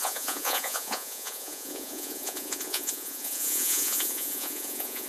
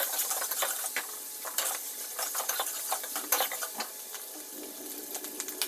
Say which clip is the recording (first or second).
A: second